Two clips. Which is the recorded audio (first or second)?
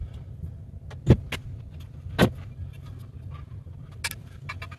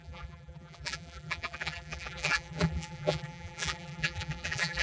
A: first